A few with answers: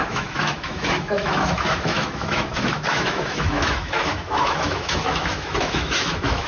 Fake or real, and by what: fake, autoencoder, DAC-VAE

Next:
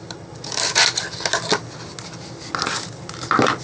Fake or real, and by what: real